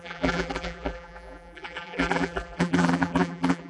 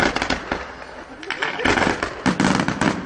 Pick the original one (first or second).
second